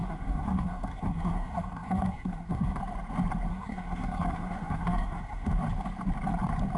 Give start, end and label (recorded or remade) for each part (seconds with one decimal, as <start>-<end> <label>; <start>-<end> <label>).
0.0-2.8 remade; 2.8-3.5 recorded; 3.5-5.5 remade; 5.5-6.8 recorded